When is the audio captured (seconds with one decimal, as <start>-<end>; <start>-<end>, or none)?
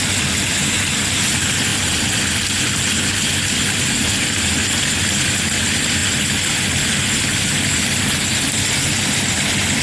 0.0-1.7; 4.4-9.8